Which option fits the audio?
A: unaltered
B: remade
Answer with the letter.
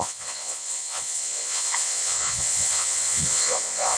B